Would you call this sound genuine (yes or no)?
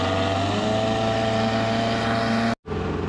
yes